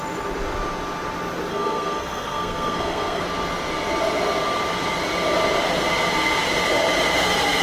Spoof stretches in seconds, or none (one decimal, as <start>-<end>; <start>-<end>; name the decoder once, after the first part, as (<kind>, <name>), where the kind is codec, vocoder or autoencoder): 1.5-3.2 (codec, SNAC)